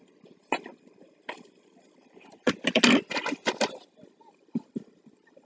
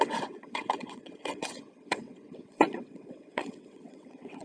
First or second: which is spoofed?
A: second